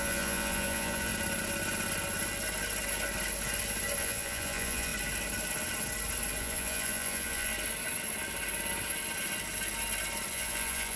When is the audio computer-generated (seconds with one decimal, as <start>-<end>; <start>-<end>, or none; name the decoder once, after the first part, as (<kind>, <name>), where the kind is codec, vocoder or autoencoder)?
0.0-1.1 (vocoder, Vocos); 4.0-4.9; 6.4-7.5; 10.3-11.0